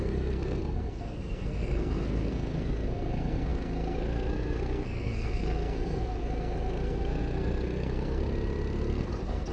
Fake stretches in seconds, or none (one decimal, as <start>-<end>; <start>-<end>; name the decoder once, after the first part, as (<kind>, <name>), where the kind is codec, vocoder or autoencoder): 0.0-8.2 (codec, SNAC); 8.9-9.5